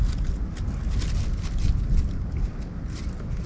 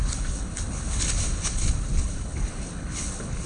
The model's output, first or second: second